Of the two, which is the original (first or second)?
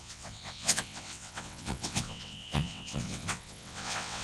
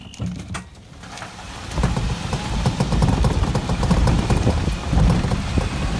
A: second